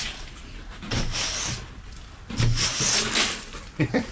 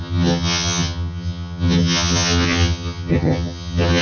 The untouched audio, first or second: first